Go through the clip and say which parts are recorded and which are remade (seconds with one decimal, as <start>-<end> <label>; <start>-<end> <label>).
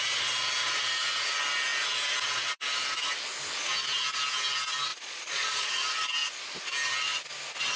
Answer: 0.0-4.9 recorded; 4.9-5.7 remade; 5.7-7.8 recorded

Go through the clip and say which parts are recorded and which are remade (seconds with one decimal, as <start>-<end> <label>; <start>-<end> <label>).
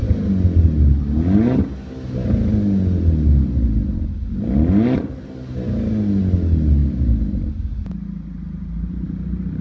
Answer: 0.0-9.6 recorded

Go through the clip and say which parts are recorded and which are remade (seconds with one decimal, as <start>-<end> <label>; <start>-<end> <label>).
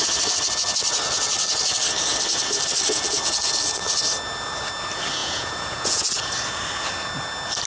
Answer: 0.0-5.2 recorded; 5.2-6.0 remade; 6.0-7.7 recorded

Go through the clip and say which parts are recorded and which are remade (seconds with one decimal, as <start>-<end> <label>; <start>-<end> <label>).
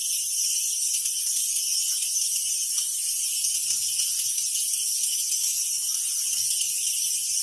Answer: 0.0-7.4 recorded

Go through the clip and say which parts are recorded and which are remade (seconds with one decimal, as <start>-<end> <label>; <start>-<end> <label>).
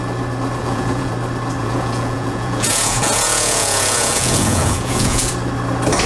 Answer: 0.0-0.6 recorded; 0.6-1.1 remade; 1.1-1.6 recorded; 1.6-5.3 remade; 5.3-6.1 recorded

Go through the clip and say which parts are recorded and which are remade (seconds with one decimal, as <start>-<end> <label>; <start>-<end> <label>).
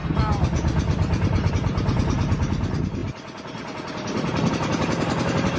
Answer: 0.0-5.6 recorded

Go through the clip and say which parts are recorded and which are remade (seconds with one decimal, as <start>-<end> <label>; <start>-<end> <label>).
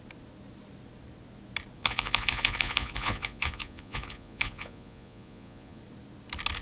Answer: 0.0-1.8 recorded; 1.8-5.8 remade; 5.8-6.6 recorded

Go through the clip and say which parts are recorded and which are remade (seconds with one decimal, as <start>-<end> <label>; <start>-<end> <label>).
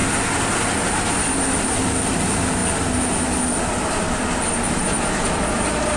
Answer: 0.0-6.0 recorded